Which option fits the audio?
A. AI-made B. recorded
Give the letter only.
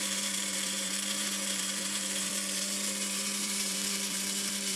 A